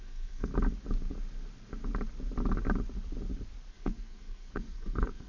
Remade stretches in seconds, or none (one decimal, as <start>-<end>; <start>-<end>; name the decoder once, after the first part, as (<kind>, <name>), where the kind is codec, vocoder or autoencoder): 0.0-0.5 (codec, SNAC); 3.7-5.3